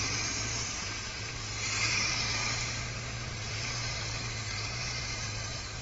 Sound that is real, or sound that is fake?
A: fake